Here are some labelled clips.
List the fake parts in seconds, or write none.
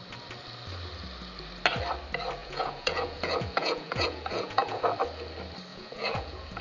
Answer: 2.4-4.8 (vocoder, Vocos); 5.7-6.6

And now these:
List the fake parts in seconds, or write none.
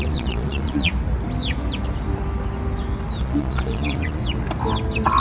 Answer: 0.0-0.9 (vocoder, Vocos); 3.2-4.2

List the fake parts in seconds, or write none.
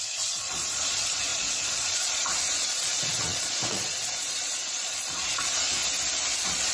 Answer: 0.0-5.8 (vocoder, Vocos); 6.3-6.7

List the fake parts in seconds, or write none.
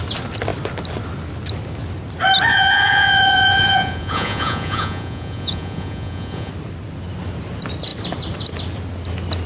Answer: 2.5-6.5 (vocoder, Vocos)